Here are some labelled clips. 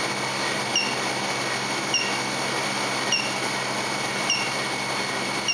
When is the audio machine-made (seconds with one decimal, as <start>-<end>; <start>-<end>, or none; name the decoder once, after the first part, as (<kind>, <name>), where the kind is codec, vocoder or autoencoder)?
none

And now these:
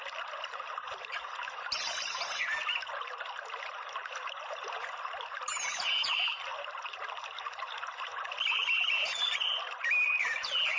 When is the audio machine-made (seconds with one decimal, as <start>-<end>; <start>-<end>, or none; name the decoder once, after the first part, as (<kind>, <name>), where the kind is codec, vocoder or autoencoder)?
none

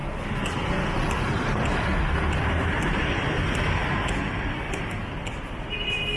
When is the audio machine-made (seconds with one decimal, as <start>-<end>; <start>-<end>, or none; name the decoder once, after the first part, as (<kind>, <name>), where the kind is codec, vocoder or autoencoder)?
2.0-3.8 (vocoder, BigVGAN v2); 4.4-6.2

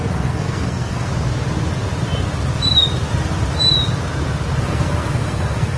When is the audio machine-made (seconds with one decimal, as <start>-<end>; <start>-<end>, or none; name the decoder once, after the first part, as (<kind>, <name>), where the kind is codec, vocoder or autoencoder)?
0.0-1.1 (codec, SNAC); 4.6-5.8